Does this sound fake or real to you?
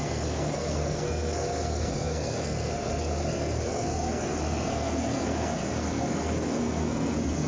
fake